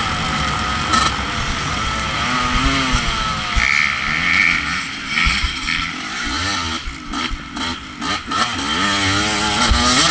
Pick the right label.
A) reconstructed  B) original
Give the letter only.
B